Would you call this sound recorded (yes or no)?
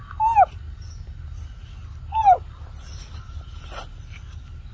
yes